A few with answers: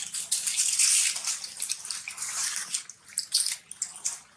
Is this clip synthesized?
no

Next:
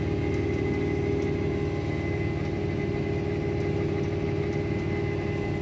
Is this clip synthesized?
no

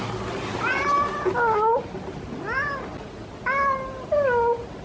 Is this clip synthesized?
no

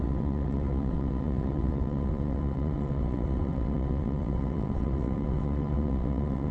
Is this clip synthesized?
yes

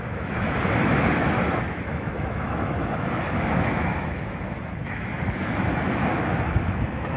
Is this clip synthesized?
yes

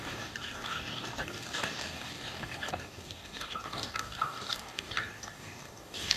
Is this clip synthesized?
yes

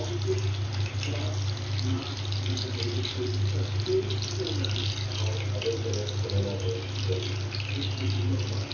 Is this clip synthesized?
no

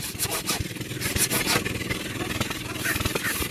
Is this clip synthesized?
no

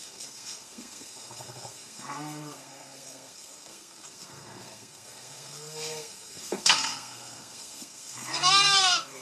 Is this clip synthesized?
yes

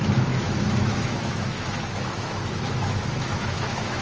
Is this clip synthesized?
yes